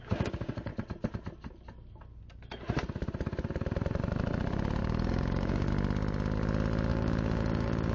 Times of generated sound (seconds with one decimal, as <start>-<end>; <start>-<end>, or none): 0.0-0.7; 4.8-5.7; 6.9-7.9